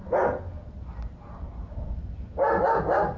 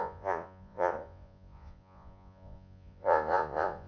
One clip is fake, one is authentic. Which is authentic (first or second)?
first